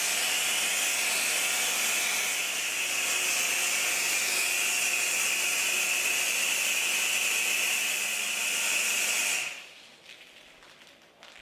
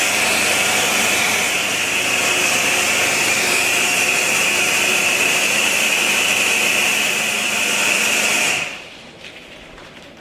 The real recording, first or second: first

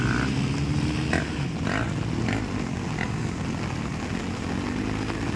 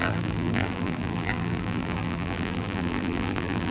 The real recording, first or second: first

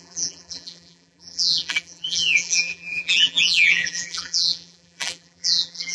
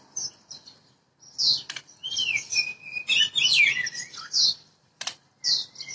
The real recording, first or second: second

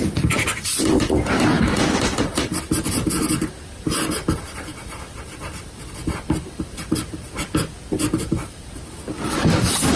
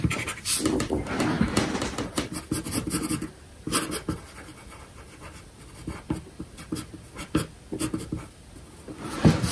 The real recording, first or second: second